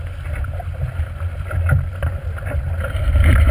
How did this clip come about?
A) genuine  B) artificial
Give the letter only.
A